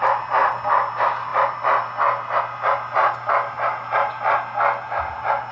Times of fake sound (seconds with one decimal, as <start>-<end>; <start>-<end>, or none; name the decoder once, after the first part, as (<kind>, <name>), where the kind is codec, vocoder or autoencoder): none